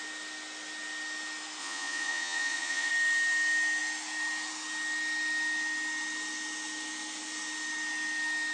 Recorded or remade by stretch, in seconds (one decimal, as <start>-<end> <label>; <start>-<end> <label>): 0.0-1.6 recorded; 1.6-2.9 remade; 2.9-8.5 recorded